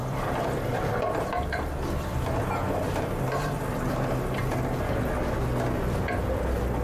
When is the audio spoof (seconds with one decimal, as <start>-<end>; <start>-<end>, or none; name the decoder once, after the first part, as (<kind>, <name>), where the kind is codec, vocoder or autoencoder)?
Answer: 0.0-2.4 (vocoder, BigVGAN v2)